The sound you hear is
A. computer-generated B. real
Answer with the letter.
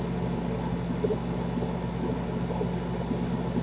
B